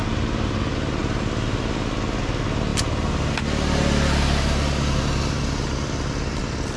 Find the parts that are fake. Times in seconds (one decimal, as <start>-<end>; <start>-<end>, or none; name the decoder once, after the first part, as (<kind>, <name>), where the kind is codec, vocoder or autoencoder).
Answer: 1.0-2.2 (vocoder, BigVGAN v2)